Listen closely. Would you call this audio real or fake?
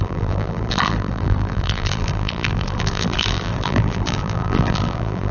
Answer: fake